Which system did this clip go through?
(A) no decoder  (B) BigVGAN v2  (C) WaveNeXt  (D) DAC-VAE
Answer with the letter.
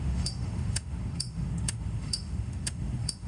D